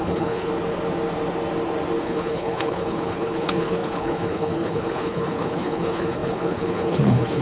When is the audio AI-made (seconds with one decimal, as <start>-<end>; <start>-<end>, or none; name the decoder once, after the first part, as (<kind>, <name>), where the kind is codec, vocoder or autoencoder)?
0.0-0.5 (codec, HILCodec); 2.0-7.4